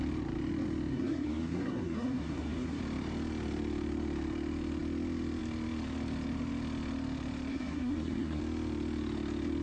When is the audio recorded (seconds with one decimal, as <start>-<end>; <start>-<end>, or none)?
0.0-0.9; 2.8-7.5; 8.4-9.6